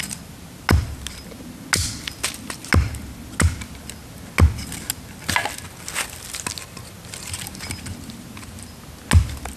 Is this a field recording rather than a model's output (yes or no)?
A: yes